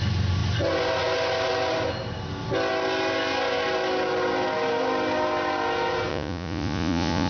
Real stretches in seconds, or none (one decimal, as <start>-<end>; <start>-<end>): 0.0-6.1